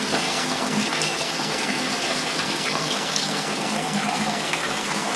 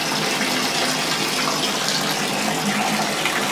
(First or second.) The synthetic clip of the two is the first